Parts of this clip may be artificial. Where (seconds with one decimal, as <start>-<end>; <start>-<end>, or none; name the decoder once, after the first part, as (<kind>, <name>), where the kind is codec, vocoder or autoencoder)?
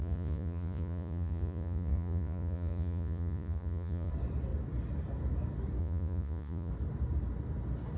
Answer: 0.0-4.1 (vocoder, Vocos); 5.8-6.7